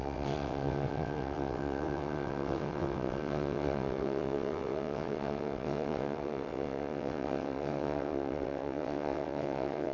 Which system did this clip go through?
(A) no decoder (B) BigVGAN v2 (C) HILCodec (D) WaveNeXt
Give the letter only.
D